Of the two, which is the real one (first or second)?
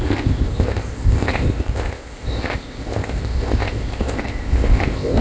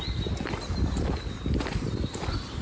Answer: second